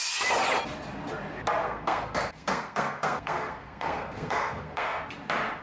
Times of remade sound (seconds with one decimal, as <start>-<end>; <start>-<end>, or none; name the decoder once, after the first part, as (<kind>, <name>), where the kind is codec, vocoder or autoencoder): 1.6-5.0 (codec, SNAC)